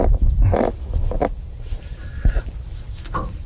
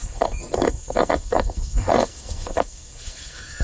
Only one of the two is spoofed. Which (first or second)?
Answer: second